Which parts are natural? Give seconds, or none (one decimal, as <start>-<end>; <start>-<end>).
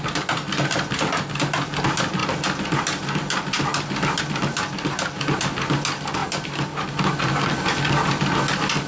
0.0-8.9